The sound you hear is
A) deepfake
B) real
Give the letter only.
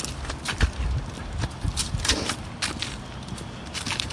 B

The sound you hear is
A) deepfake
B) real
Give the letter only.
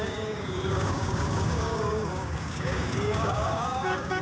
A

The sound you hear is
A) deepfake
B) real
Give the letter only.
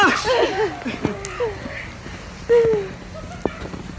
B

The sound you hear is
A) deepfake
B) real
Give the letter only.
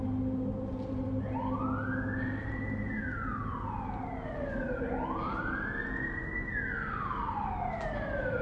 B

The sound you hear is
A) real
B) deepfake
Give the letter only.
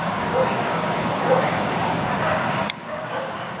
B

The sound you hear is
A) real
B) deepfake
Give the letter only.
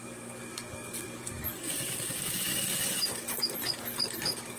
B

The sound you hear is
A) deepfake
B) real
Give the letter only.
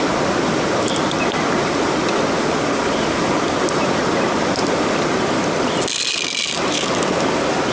B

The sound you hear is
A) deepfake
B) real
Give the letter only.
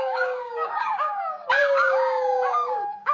A